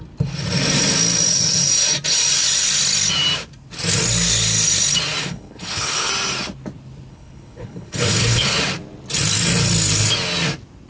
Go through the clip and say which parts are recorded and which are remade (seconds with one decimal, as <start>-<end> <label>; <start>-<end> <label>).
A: 0.0-5.2 recorded; 5.2-6.1 remade; 6.1-7.1 recorded; 7.1-8.6 remade; 8.6-10.9 recorded